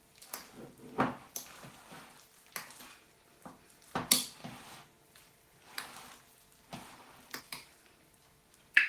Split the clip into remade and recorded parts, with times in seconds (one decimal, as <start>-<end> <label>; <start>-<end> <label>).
0.0-0.4 remade; 0.4-3.1 recorded; 3.1-4.4 remade; 4.4-7.4 recorded; 7.4-8.9 remade

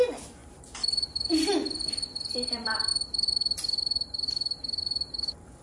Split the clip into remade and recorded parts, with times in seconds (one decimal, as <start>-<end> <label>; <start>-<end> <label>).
0.0-0.4 recorded; 0.4-2.9 remade; 2.9-5.6 recorded

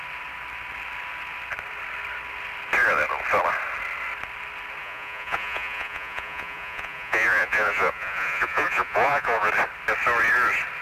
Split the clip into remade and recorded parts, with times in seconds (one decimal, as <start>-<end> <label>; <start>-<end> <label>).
0.0-4.8 recorded; 4.8-9.5 remade; 9.5-10.8 recorded

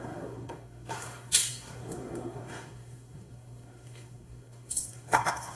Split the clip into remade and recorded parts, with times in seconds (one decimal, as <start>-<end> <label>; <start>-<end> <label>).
0.0-5.6 remade

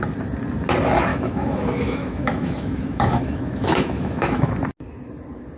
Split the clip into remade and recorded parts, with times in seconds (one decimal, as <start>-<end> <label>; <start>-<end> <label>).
0.0-1.1 recorded; 1.1-4.5 remade; 4.5-5.6 recorded

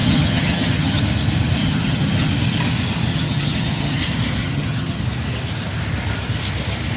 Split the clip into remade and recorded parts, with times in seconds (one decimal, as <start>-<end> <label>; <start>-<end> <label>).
0.0-1.0 remade; 1.0-1.6 recorded; 1.6-2.3 remade; 2.3-3.1 recorded; 3.1-4.0 remade; 4.0-4.4 recorded; 4.4-5.0 remade; 5.0-7.0 recorded